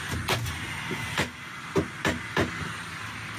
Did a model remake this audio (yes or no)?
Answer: no